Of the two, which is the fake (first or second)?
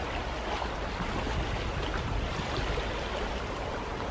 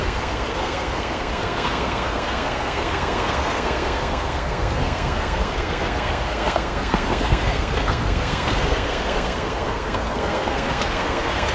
second